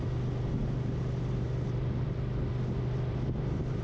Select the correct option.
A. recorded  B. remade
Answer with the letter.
A